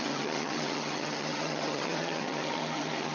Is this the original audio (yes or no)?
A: no